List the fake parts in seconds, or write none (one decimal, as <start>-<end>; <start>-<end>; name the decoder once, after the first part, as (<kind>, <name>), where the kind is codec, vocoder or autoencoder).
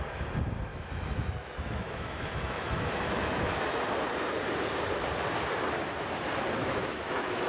0.7-3.8 (autoencoder, DAC-VAE); 6.6-7.5